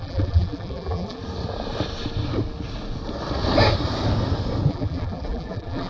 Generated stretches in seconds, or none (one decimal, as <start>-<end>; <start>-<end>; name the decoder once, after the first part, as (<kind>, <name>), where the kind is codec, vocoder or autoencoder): 0.0-1.2 (vocoder, BigVGAN v2); 4.7-5.9